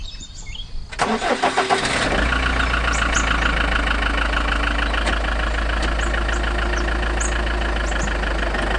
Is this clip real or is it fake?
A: real